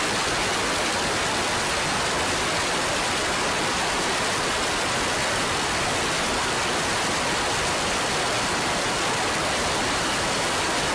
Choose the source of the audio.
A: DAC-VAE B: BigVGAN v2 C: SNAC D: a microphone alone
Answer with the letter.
D